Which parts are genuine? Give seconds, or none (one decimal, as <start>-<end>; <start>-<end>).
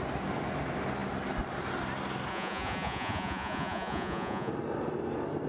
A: 0.0-2.3; 4.5-5.5